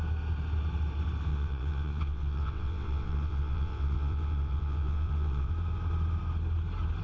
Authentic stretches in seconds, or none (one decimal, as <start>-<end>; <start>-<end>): 0.0-1.3; 5.5-7.0